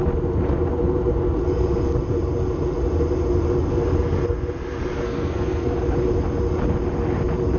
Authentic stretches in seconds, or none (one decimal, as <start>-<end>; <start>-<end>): 0.0-5.0; 5.7-7.6

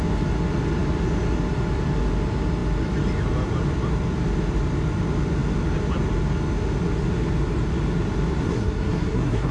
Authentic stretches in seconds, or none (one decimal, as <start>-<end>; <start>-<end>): 0.0-8.4

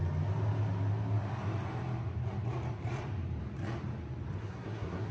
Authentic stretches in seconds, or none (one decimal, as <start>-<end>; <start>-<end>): 0.0-4.4

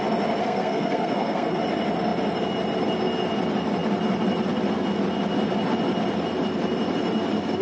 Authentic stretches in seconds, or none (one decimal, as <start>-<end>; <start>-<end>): 0.0-0.4; 1.6-7.6

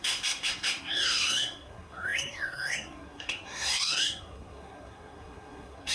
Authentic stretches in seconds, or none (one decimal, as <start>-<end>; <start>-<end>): none

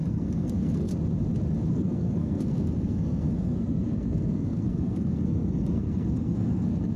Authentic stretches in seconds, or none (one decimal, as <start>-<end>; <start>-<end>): 0.9-1.7